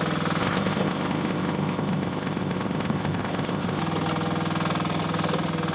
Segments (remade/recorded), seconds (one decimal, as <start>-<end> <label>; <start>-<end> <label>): 0.0-0.4 recorded; 0.4-3.8 remade; 3.8-5.7 recorded